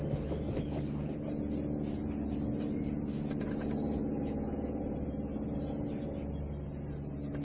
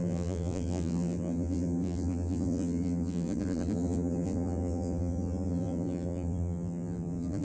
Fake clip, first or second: second